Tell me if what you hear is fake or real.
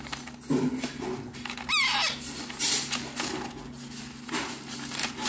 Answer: real